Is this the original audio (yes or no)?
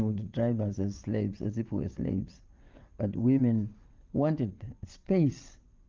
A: no